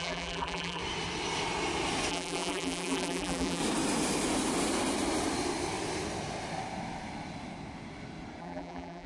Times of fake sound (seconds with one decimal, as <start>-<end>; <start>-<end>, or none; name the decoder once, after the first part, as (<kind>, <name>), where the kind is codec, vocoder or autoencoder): 0.0-0.8 (vocoder, BigVGAN v2); 2.1-3.6; 8.4-9.1